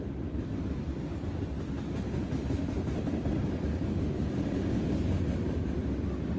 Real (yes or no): yes